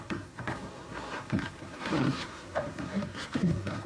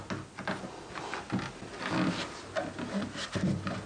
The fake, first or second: first